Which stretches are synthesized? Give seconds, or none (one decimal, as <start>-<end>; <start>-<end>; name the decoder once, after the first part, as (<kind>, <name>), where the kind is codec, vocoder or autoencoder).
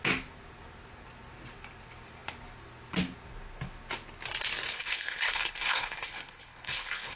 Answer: 4.7-7.2 (codec, HILCodec)